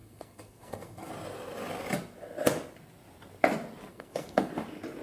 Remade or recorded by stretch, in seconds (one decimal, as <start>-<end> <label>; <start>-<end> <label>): 0.0-1.1 remade; 1.1-3.9 recorded; 3.9-4.5 remade; 4.5-5.0 recorded